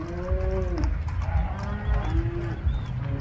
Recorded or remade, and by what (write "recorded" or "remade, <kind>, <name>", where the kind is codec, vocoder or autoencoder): recorded